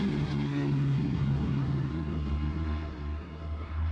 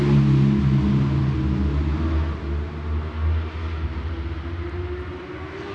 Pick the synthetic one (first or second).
first